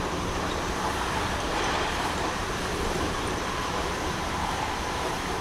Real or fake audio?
fake